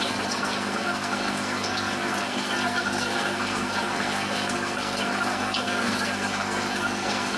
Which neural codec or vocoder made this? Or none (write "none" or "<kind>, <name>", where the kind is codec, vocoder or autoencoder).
codec, SNAC